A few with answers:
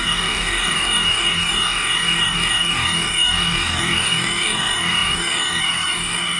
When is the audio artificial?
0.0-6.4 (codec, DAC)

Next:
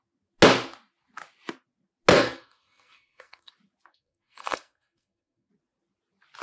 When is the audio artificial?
2.1-3.5 (codec, SNAC); 3.9-5.5

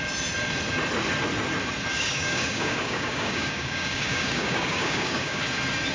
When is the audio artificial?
1.9-5.4 (codec, DAC)

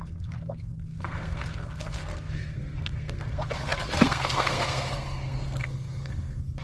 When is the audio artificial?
0.0-6.6 (codec, SNAC)

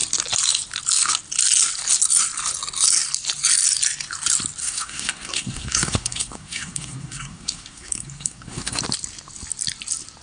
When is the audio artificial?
4.6-8.8 (codec, SNAC)

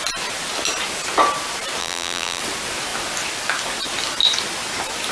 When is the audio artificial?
1.8-2.4 (vocoder, BigVGAN v2)

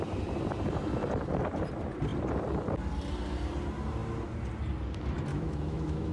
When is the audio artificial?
5.3-6.1 (autoencoder, DAC-VAE)